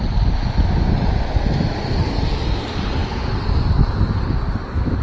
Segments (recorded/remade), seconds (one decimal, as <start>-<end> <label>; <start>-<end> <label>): 0.0-5.0 recorded